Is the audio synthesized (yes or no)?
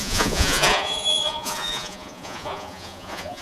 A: yes